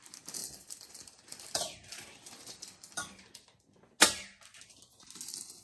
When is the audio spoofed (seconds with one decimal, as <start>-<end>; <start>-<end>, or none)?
0.4-3.6